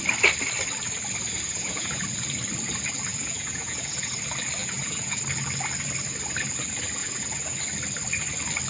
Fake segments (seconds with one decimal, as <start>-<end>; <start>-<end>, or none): 1.5-2.0; 3.1-4.1; 4.6-5.2; 7.0-7.6